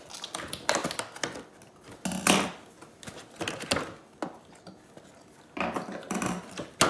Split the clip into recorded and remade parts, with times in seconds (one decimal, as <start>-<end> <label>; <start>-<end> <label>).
0.0-6.9 recorded